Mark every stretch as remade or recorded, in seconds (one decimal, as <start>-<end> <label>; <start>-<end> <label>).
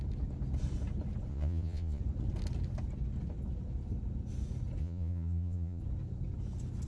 0.0-1.3 recorded; 1.3-2.0 remade; 2.0-4.8 recorded; 4.8-5.8 remade; 5.8-6.9 recorded